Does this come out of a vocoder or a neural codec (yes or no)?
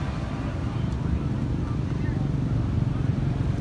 no